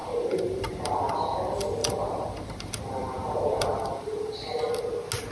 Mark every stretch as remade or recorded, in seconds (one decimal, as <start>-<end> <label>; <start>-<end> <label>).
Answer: 0.0-1.0 remade; 1.0-1.8 recorded; 1.8-4.7 remade; 4.7-5.3 recorded